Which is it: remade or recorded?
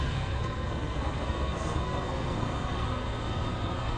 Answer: remade